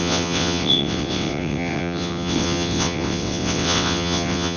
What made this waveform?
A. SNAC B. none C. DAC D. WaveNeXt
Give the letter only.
D